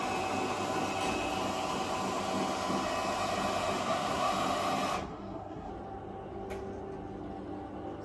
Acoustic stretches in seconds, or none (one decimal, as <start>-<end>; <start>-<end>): 0.0-3.8; 4.3-5.1; 5.7-8.0